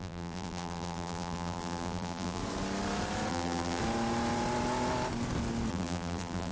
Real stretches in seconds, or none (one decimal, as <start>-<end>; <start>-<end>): 2.4-3.3; 3.8-5.7